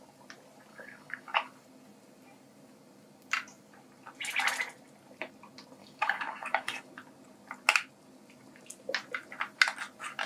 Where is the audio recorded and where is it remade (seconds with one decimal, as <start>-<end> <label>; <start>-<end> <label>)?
0.0-0.7 recorded; 0.7-1.5 remade; 1.5-5.8 recorded; 5.8-6.9 remade; 6.9-10.3 recorded